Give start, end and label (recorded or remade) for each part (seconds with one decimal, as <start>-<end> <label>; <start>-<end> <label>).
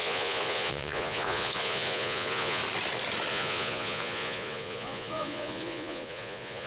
0.0-2.6 remade; 2.6-3.3 recorded; 3.3-6.7 remade